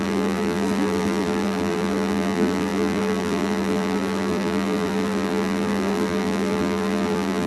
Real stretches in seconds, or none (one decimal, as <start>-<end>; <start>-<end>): none